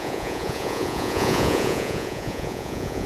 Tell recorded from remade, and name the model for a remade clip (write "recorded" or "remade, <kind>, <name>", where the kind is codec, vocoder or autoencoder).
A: remade, vocoder, Vocos